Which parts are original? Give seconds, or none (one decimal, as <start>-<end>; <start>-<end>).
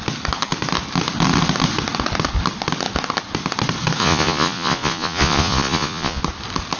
0.0-4.0; 6.2-6.8